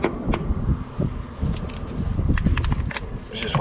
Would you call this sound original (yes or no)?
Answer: yes